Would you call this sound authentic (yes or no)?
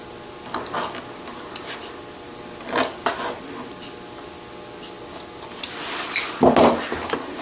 yes